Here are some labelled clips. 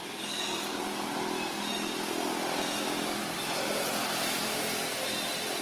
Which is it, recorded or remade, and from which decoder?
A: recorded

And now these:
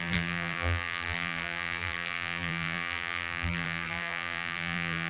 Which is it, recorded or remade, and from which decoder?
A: remade, vocoder, BigVGAN v2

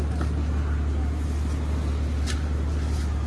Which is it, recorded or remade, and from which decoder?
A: recorded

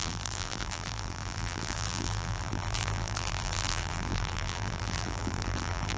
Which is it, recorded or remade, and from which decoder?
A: remade, vocoder, BigVGAN v2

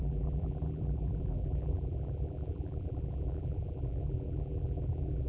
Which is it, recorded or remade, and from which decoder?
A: remade, vocoder, BigVGAN v2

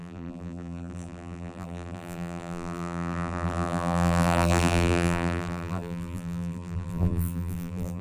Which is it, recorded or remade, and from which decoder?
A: remade, vocoder, BigVGAN v2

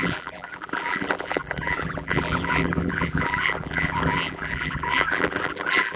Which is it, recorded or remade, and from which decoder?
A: remade, vocoder, BigVGAN v2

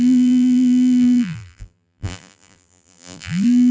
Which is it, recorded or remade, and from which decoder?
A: remade, vocoder, BigVGAN v2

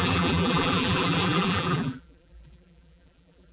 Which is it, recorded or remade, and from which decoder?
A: remade, vocoder, BigVGAN v2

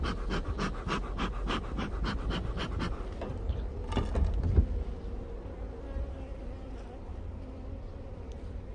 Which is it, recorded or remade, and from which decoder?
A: recorded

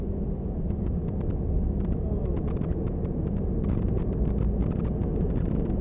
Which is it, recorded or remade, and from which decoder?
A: recorded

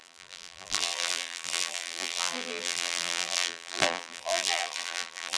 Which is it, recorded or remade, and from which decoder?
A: remade, vocoder, BigVGAN v2